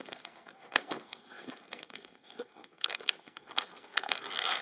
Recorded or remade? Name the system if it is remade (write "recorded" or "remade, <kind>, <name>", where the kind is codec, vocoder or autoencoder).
remade, codec, SNAC